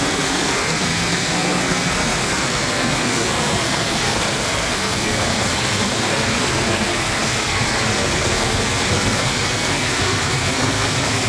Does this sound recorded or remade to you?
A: remade